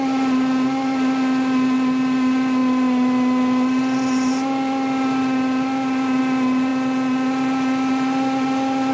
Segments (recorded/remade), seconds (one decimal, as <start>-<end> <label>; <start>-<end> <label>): 0.0-8.9 recorded